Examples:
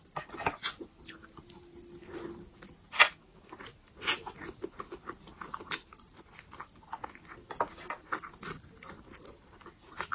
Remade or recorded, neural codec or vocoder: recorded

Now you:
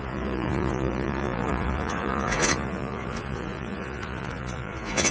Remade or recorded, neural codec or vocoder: remade, vocoder, Vocos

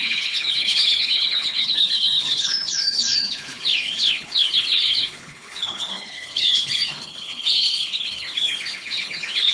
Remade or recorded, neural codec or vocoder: remade, codec, HILCodec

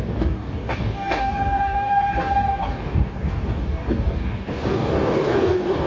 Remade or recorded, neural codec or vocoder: remade, codec, DAC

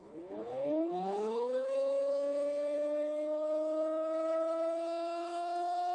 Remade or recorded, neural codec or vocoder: remade, codec, HILCodec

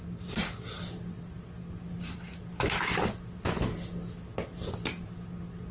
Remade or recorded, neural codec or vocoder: recorded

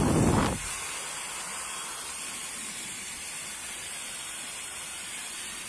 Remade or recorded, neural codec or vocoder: recorded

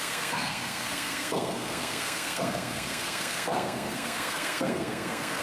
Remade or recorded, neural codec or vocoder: remade, codec, SNAC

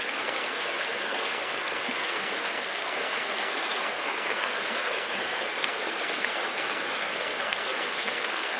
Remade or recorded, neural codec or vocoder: remade, codec, SNAC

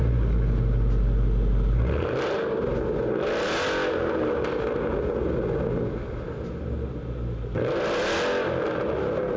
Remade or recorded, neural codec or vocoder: recorded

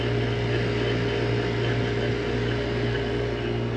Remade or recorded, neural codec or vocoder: recorded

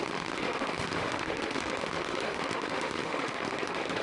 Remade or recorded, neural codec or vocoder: remade, autoencoder, DAC-VAE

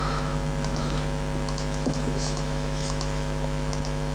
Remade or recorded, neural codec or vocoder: remade, autoencoder, DAC-VAE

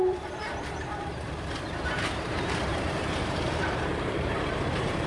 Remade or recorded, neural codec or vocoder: remade, vocoder, BigVGAN v2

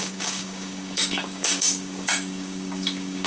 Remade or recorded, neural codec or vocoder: remade, codec, DAC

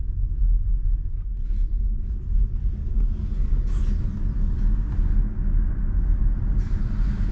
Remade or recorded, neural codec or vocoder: recorded